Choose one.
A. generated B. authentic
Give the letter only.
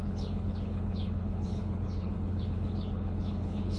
A